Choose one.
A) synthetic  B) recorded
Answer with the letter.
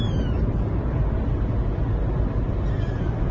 B